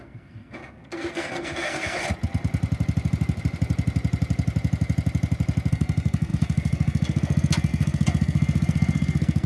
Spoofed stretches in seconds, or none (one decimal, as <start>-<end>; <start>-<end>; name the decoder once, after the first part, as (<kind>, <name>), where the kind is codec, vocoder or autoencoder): 0.0-2.0 (codec, SNAC); 5.7-9.5

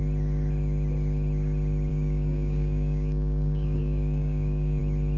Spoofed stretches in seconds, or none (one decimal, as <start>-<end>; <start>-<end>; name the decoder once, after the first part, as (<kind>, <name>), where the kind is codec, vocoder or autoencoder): 1.9-4.8 (codec, DAC)

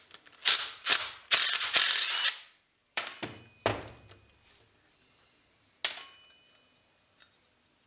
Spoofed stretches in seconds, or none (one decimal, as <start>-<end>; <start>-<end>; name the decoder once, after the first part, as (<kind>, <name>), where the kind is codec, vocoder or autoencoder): 2.8-3.4 (vocoder, BigVGAN v2)

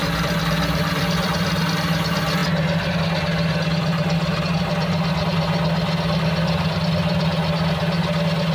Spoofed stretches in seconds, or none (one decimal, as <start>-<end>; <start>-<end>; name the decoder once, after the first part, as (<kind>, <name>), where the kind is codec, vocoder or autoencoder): 0.0-1.6 (vocoder, BigVGAN v2); 2.4-2.9

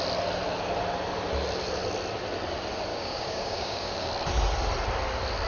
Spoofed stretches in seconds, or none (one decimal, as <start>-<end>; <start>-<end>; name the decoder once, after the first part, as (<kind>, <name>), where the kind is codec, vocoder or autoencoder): 2.9-4.1 (codec, DAC)

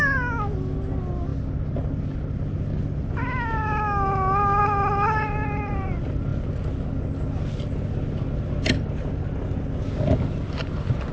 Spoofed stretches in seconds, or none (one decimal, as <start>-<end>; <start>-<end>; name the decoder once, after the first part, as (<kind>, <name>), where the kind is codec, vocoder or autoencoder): none

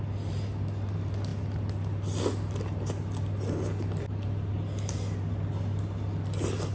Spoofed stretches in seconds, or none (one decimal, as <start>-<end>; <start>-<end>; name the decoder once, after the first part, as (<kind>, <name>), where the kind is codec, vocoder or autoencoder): none

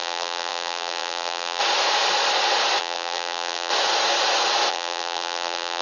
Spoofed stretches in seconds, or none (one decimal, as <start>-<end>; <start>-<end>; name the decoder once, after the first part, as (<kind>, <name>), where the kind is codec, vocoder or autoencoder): 0.0-1.6 (vocoder, BigVGAN v2); 2.8-3.7; 4.7-5.8